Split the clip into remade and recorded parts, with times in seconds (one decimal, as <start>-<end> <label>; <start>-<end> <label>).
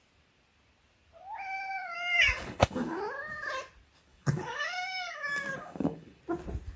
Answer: 0.0-1.7 recorded; 1.7-3.0 remade; 3.0-4.1 recorded; 4.1-6.2 remade; 6.2-6.8 recorded